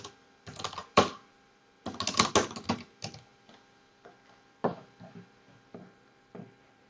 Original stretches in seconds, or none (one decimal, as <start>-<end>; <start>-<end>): 0.0-0.8; 1.6-3.3